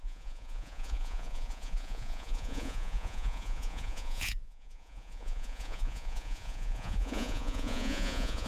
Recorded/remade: remade